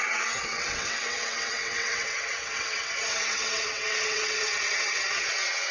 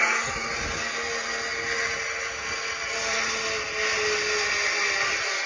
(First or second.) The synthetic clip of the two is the first